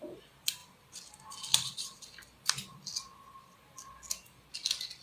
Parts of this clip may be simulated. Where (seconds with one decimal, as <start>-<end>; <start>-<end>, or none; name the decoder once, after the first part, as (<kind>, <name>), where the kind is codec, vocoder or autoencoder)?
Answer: none